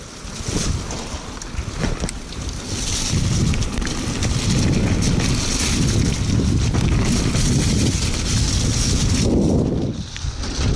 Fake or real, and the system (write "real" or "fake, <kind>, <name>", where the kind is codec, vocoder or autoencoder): real